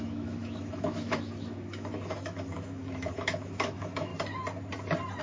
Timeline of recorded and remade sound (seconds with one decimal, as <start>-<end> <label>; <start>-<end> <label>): 0.0-4.1 remade; 4.1-5.2 recorded